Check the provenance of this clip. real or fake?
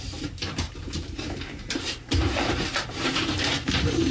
fake